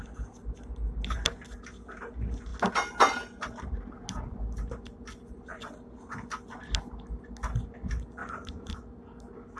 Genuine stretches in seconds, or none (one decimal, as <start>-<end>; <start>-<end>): 0.0-8.2; 8.7-9.6